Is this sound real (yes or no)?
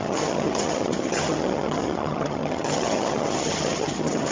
no